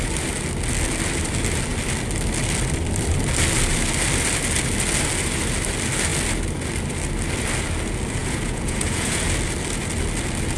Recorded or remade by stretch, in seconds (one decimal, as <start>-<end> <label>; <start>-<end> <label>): 0.0-8.2 recorded; 8.2-9.2 remade; 9.2-10.6 recorded

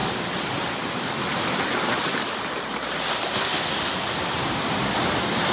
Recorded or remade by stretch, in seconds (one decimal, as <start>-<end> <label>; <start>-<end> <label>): 0.0-5.5 recorded

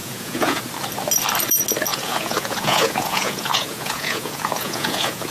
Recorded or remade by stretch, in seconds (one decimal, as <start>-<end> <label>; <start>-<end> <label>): 0.0-0.6 remade; 0.6-1.9 recorded; 1.9-5.3 remade

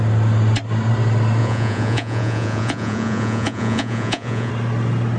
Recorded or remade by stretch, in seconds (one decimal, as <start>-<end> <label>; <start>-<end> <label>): 0.0-1.4 recorded; 1.4-4.5 remade; 4.5-5.2 recorded